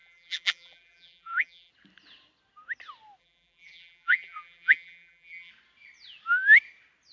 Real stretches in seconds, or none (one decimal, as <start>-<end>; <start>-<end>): 1.7-3.2; 5.5-7.1